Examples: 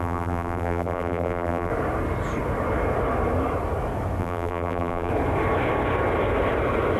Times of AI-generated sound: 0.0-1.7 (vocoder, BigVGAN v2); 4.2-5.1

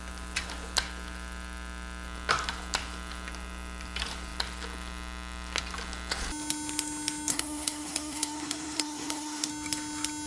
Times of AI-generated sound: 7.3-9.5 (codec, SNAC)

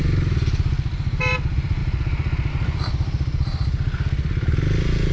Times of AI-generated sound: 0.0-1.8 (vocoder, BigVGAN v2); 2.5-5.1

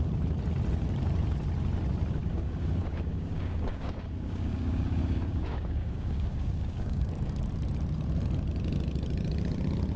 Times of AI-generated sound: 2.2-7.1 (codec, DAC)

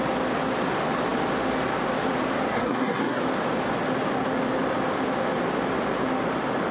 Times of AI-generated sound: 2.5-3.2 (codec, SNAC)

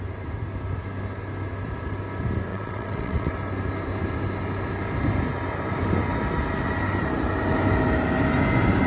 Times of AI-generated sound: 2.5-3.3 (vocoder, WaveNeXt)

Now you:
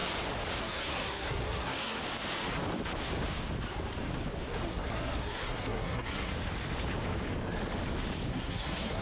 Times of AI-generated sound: 0.6-2.0 (codec, SNAC); 4.7-6.3; 8.3-9.0